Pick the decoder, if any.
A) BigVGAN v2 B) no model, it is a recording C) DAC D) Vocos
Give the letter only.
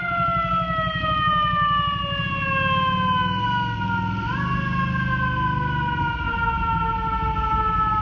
B